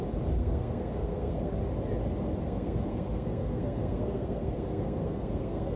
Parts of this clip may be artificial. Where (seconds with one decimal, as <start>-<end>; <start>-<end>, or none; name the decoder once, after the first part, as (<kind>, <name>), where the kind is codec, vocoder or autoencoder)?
0.4-1.6 (codec, SNAC); 2.4-5.8